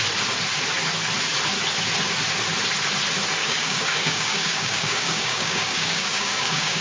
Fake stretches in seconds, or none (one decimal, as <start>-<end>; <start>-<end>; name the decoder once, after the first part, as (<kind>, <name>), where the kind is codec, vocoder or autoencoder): 3.4-6.8 (codec, DAC)